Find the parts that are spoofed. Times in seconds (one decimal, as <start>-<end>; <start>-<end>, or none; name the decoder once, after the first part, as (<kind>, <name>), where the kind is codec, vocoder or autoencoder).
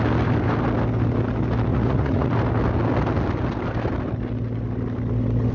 1.7-2.3 (vocoder, Vocos)